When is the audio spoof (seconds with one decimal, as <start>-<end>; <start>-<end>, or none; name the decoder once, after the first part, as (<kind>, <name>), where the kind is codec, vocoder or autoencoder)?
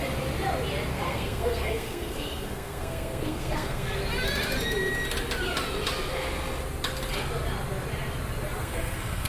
0.9-4.0 (codec, SNAC); 8.6-9.3